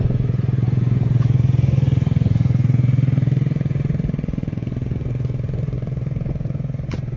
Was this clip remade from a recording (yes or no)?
yes